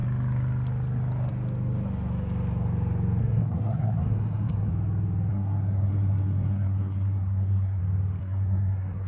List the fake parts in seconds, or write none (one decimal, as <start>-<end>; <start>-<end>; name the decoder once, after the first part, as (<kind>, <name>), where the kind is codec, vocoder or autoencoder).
3.2-4.7 (codec, SNAC); 5.3-7.8; 8.2-9.1

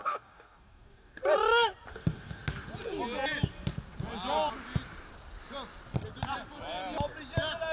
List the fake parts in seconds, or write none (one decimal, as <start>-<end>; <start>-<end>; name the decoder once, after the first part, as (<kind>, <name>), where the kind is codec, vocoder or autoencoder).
0.0-1.2 (codec, DAC); 1.9-2.4

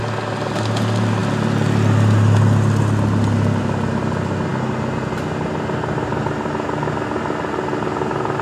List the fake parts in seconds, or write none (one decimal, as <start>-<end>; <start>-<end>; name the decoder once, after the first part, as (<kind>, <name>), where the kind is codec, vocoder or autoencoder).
none